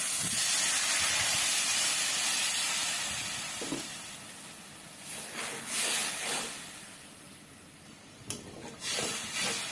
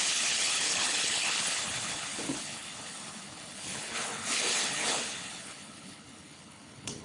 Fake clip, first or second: second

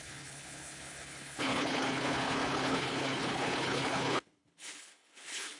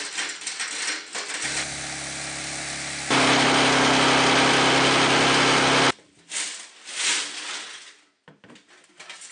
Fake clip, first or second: first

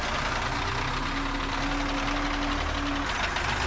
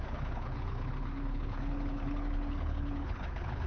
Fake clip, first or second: second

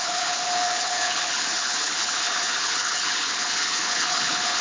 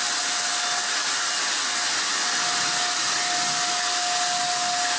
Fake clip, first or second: first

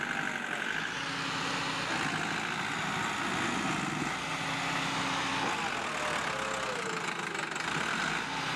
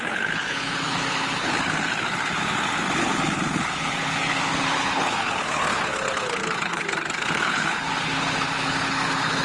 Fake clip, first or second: second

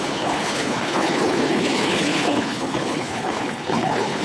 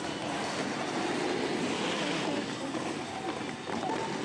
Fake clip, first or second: first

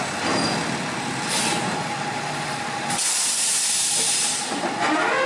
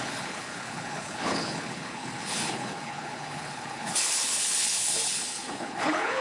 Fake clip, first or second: second